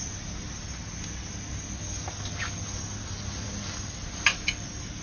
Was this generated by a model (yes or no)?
no